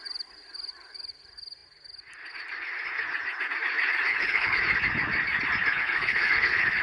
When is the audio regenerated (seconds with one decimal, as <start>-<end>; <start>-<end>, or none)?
4.1-4.6; 5.7-6.8